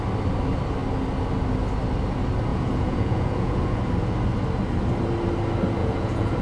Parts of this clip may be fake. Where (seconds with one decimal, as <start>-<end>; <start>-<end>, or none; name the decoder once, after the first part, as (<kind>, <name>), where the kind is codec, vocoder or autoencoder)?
2.5-3.8 (vocoder, Vocos); 5.8-6.4